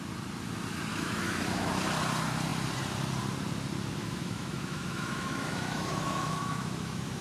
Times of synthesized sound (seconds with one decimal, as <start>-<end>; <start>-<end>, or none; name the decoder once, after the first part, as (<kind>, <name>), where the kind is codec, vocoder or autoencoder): 0.9-1.7 (autoencoder, DAC-VAE); 4.0-7.2